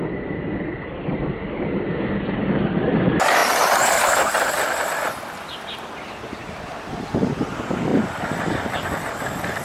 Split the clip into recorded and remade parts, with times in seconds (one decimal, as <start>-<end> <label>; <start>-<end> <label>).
0.0-9.6 recorded